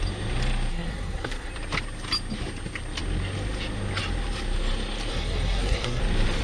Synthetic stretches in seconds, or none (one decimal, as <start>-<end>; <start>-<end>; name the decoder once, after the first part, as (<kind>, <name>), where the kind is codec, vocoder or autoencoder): 0.7-1.5 (codec, SNAC); 5.1-6.0